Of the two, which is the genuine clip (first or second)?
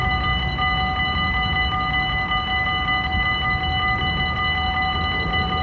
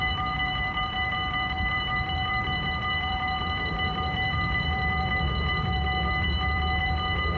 first